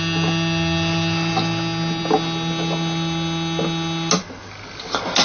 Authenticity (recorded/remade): recorded